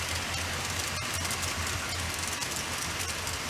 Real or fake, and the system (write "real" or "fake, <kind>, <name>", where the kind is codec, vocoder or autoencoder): real